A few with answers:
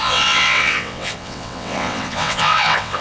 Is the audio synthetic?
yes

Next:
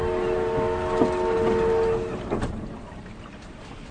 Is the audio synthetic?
no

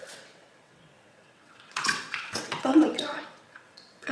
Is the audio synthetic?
yes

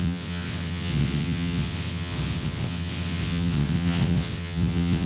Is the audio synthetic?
yes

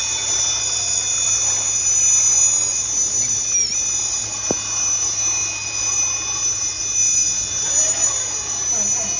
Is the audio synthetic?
no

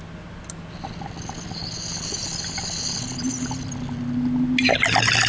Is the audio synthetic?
no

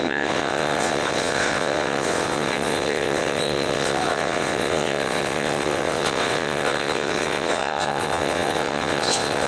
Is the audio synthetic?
yes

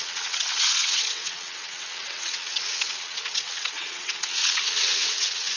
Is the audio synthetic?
yes